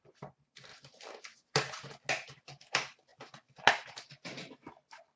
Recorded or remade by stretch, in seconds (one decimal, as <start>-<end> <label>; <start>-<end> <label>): 0.0-5.2 recorded